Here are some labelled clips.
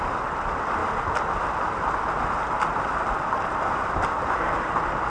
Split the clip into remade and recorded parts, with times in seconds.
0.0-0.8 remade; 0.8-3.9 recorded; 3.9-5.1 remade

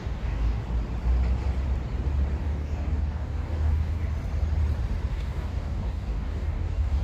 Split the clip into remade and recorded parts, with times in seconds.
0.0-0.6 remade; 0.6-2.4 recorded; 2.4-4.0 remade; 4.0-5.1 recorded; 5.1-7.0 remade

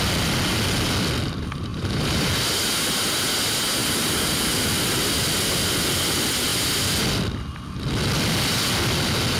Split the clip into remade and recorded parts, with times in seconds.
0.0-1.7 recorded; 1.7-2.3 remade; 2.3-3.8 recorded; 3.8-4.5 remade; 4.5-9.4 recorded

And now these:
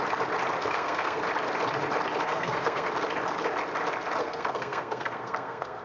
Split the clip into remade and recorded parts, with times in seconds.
0.0-0.6 recorded; 0.6-1.2 remade; 1.2-2.2 recorded; 2.2-2.9 remade; 2.9-4.2 recorded; 4.2-5.8 remade

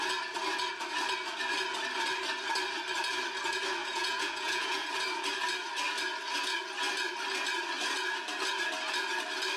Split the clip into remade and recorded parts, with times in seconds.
0.0-3.8 recorded; 3.8-4.9 remade; 4.9-9.6 recorded

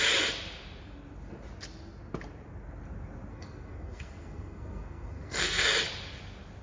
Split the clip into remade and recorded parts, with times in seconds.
0.0-3.3 recorded; 3.3-5.7 remade; 5.7-6.6 recorded

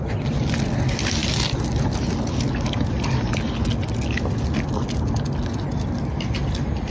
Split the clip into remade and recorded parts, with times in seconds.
0.0-6.9 recorded